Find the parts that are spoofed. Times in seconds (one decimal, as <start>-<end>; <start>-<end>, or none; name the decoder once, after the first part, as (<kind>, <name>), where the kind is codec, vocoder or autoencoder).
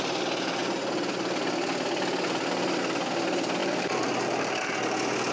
3.6-4.6 (vocoder, BigVGAN v2)